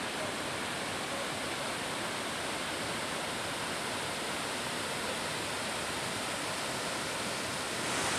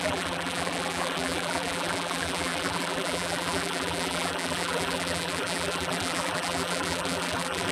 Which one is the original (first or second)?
first